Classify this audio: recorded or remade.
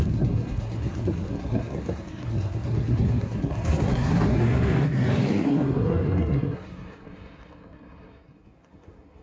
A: remade